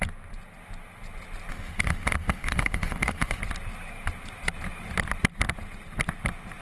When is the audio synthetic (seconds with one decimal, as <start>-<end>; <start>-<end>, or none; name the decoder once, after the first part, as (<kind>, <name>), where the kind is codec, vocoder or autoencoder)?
1.5-3.4 (autoencoder, DAC-VAE)